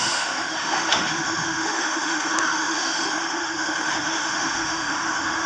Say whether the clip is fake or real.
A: fake